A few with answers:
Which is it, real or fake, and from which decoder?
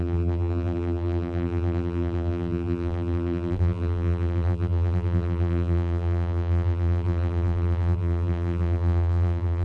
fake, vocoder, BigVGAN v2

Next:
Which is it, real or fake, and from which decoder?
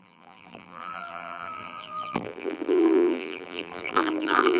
fake, vocoder, BigVGAN v2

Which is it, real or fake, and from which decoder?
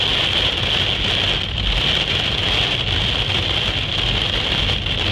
real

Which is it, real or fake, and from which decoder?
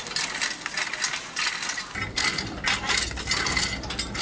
real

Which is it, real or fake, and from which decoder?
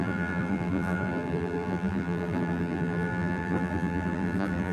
fake, vocoder, BigVGAN v2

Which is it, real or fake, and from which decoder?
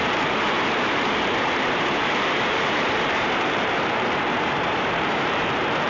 fake, vocoder, BigVGAN v2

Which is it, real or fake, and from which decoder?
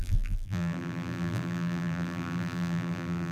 fake, vocoder, BigVGAN v2